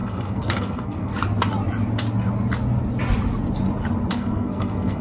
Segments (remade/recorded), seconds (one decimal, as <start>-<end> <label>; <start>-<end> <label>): 0.0-1.1 remade; 1.1-4.1 recorded; 4.1-5.0 remade